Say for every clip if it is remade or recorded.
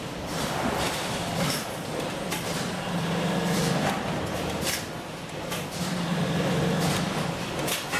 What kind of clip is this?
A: remade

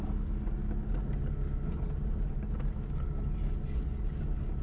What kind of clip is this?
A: recorded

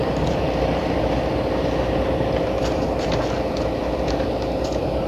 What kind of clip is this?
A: remade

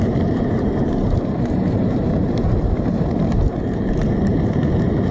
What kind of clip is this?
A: remade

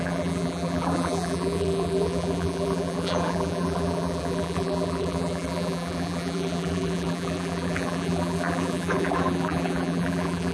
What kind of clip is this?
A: remade